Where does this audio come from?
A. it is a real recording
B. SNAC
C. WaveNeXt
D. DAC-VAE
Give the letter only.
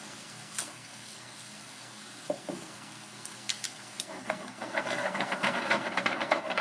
B